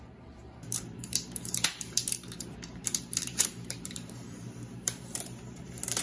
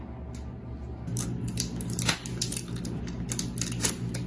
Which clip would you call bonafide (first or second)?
second